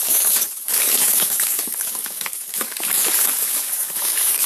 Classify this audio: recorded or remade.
remade